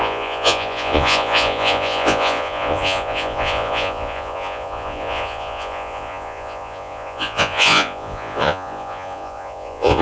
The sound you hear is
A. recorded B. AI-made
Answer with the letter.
B